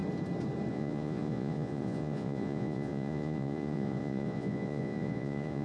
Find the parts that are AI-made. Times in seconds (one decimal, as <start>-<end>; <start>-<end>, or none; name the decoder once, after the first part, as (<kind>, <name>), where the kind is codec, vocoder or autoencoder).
0.7-5.6 (vocoder, Vocos)